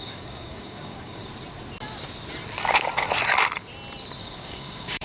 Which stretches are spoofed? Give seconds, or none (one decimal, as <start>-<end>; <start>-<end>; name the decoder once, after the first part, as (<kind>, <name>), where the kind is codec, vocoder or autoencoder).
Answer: 0.0-1.2 (codec, DAC); 4.2-5.0